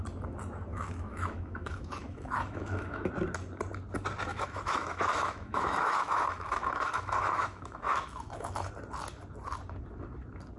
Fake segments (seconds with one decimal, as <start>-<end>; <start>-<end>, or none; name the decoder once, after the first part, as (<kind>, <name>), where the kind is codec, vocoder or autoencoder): 0.7-3.1 (autoencoder, DAC-VAE); 4.3-8.7